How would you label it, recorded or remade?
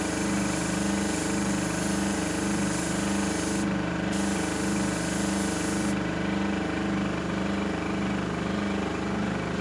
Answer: remade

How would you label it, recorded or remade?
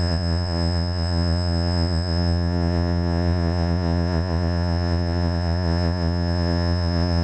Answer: remade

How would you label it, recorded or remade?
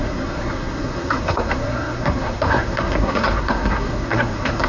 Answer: remade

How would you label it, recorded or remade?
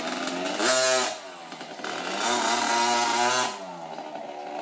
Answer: recorded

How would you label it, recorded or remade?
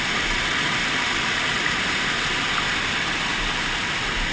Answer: recorded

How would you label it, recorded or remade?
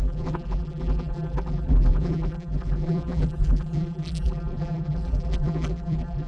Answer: remade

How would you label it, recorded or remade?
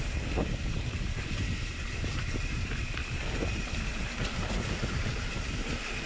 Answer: recorded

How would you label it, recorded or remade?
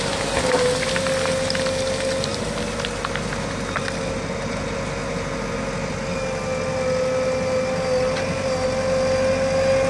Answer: recorded